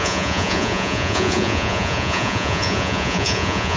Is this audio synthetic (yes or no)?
yes